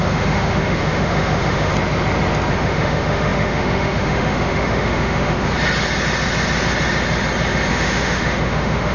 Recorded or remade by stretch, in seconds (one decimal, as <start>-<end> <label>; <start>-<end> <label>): 0.0-1.7 remade; 1.7-2.5 recorded; 2.5-5.5 remade; 5.5-7.7 recorded; 7.7-8.9 remade